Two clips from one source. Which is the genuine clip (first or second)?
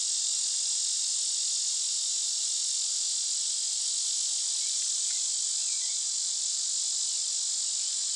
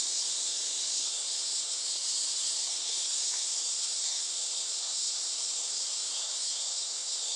first